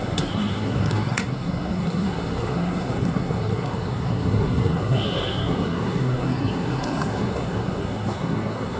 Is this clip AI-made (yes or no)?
yes